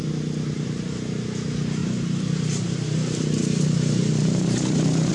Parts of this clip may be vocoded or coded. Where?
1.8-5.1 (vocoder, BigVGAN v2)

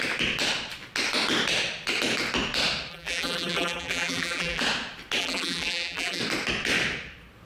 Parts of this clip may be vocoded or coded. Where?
2.9-4.6 (vocoder, BigVGAN v2); 5.2-6.2

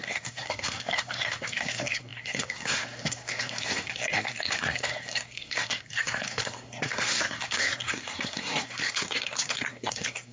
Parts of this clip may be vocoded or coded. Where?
0.0-10.3 (codec, SNAC)